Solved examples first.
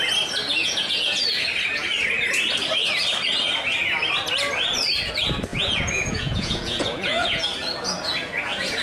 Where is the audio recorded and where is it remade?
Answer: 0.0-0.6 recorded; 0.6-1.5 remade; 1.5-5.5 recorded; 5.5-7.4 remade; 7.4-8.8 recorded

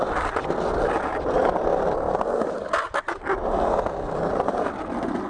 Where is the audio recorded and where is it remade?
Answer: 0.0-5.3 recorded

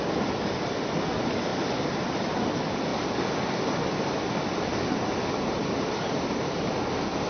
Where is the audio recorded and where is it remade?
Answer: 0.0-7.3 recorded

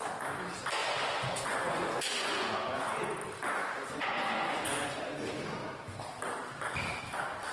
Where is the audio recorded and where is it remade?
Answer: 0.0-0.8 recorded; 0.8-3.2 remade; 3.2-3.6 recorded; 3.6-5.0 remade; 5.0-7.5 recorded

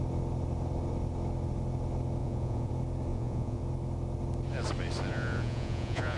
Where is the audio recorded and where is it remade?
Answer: 0.0-2.2 recorded; 2.2-2.7 remade; 2.7-3.1 recorded; 3.1-3.6 remade; 3.6-5.1 recorded; 5.1-6.2 remade

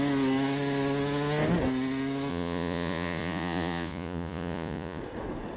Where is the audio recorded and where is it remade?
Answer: 0.0-2.3 recorded; 2.3-5.0 remade; 5.0-5.6 recorded

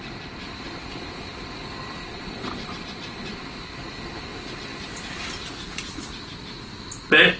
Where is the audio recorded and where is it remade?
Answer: 0.0-2.1 recorded; 2.1-3.4 remade; 3.4-7.4 recorded

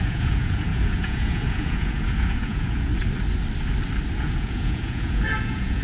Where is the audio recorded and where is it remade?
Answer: 0.0-2.9 remade; 2.9-4.2 recorded; 4.2-5.8 remade